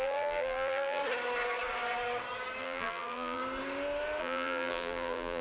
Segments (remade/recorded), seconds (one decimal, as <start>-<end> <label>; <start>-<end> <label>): 0.0-1.0 remade; 1.0-2.6 recorded; 2.6-3.4 remade; 3.4-4.2 recorded; 4.2-5.4 remade